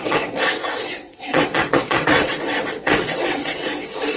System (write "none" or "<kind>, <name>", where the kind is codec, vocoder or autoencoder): vocoder, WaveNeXt